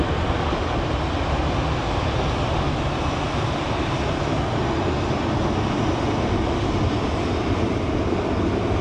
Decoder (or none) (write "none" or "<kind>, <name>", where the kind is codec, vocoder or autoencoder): none